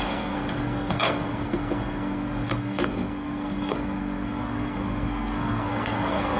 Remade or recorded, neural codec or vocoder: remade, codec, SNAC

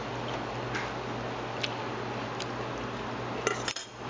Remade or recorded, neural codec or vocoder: recorded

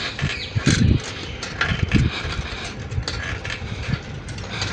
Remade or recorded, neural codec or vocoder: recorded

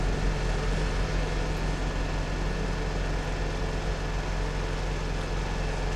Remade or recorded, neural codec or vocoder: recorded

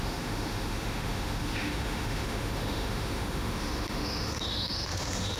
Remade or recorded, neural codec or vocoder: remade, autoencoder, DAC-VAE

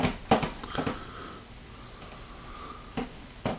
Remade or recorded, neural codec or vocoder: recorded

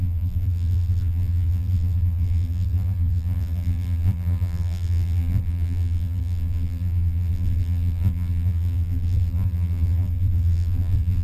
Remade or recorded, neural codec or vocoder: remade, vocoder, BigVGAN v2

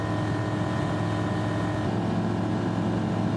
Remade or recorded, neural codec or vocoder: recorded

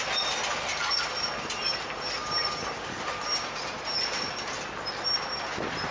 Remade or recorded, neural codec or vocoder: recorded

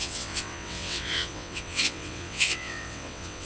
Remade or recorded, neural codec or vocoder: remade, vocoder, WaveNeXt